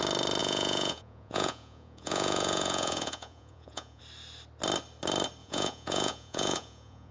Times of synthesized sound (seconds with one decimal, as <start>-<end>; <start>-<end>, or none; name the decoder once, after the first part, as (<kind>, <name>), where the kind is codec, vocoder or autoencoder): 0.4-4.0 (vocoder, Vocos); 5.4-7.1